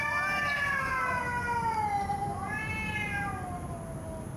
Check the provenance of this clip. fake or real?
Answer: real